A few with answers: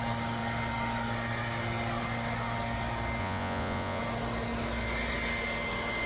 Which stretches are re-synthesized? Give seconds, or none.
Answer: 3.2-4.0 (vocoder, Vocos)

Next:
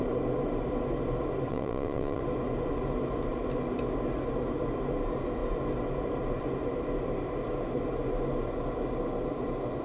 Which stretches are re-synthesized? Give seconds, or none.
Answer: 1.5-2.2 (vocoder, Vocos)

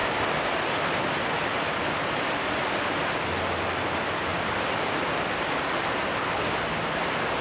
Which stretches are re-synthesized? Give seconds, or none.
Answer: none

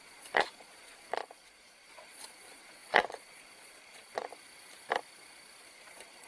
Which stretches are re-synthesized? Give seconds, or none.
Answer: 0.0-4.3 (vocoder, Vocos); 5.6-6.3